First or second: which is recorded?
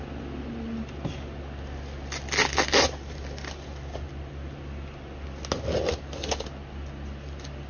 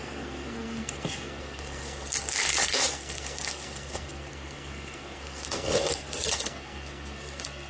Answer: first